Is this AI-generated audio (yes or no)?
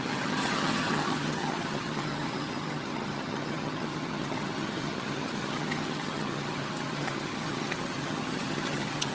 yes